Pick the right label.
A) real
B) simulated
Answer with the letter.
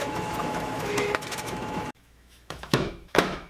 B